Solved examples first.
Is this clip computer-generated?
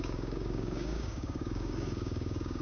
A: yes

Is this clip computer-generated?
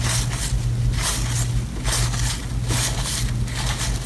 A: no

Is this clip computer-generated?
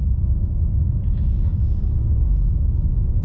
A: yes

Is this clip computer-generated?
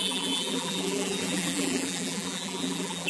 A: yes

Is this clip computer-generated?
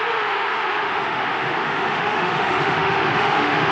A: yes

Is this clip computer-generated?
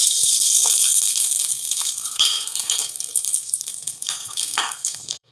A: yes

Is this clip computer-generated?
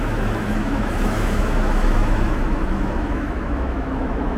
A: yes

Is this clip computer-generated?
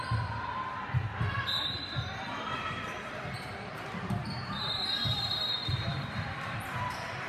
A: yes